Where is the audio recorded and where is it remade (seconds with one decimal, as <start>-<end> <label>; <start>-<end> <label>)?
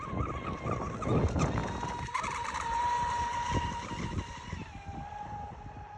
0.0-6.0 recorded